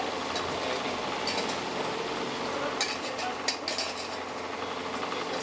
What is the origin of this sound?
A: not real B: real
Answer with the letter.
B